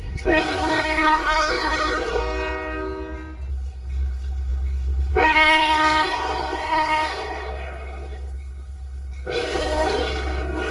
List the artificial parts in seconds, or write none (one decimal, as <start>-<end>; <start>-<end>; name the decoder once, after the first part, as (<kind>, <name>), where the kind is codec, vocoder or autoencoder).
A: 0.0-2.2 (codec, SNAC); 3.5-10.7